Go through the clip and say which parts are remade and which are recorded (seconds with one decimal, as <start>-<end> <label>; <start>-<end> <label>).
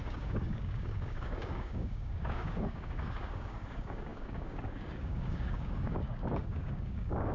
0.0-7.3 remade